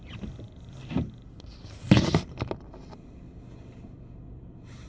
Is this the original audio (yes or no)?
yes